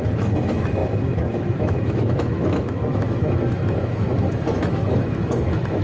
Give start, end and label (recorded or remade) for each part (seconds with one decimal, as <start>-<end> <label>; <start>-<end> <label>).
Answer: 0.0-5.8 remade